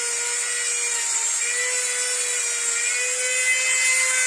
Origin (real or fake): real